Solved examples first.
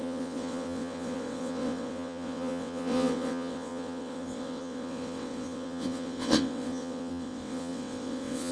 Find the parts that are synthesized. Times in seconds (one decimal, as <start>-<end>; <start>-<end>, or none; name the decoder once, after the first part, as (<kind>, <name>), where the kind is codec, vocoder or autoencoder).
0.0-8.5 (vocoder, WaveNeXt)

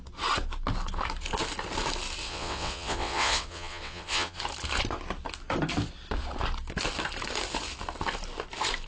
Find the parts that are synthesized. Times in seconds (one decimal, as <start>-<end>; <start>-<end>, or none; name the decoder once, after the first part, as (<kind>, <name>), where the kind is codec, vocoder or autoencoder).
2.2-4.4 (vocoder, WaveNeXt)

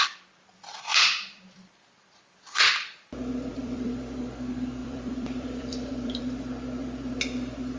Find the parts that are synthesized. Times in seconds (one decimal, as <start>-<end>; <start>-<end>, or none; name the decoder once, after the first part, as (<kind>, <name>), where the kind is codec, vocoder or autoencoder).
0.9-2.7 (vocoder, BigVGAN v2); 3.5-4.2; 4.8-6.2

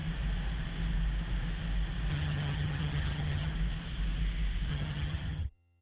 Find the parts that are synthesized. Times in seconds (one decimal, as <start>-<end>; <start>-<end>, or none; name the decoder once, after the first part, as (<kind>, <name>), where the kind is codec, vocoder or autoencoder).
2.1-3.5 (vocoder, HiFi-GAN); 4.7-5.8

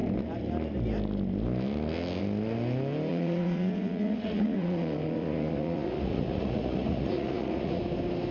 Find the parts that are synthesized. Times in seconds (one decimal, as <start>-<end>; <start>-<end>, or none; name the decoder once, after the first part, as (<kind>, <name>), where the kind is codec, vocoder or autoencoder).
3.1-7.8 (vocoder, Vocos)

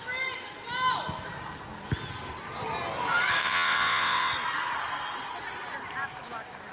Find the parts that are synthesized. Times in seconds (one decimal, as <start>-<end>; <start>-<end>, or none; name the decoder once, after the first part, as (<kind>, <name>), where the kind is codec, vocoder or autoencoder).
3.4-4.3 (vocoder, WaveNeXt)

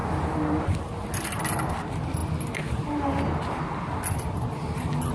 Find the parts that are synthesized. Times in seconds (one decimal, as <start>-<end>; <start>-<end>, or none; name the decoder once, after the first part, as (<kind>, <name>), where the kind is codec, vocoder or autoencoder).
none